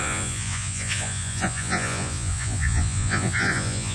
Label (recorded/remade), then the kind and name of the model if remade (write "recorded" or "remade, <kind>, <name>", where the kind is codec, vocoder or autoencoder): remade, vocoder, Vocos